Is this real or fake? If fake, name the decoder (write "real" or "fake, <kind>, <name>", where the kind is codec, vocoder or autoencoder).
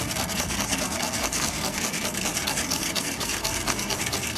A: fake, codec, SNAC